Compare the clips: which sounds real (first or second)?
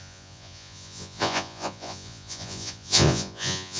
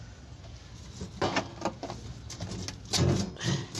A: second